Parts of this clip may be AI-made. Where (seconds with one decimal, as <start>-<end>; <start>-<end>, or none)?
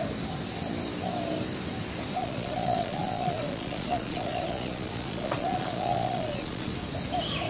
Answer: 2.2-6.7